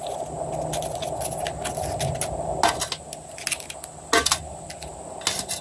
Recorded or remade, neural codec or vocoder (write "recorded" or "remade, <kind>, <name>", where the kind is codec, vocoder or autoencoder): recorded